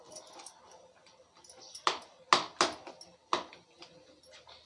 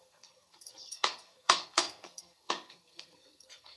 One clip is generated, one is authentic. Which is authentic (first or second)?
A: first